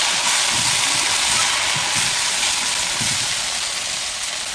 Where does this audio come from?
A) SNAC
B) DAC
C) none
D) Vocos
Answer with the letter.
C